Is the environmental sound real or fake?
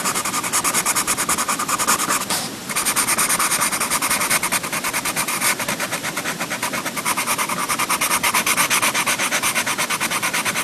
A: real